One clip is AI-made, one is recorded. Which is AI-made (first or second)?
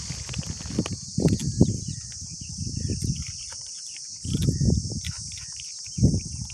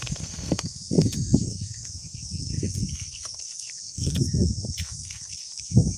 second